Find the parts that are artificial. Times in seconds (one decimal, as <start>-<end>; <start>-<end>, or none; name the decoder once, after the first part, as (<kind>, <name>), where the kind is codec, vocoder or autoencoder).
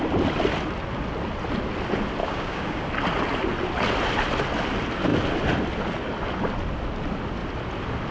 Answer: 2.2-2.9 (codec, DAC)